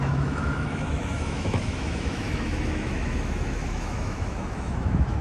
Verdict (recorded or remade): remade